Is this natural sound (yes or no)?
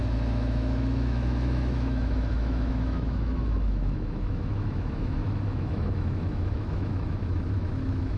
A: no